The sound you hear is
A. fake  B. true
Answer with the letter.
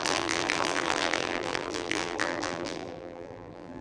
A